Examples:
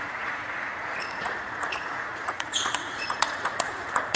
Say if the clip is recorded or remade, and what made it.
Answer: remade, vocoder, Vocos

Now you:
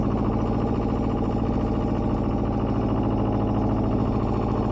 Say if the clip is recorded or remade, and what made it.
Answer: recorded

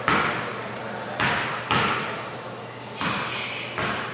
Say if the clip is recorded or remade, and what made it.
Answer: recorded